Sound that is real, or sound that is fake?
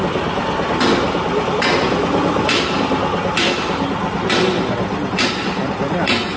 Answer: real